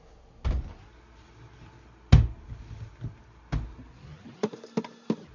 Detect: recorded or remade recorded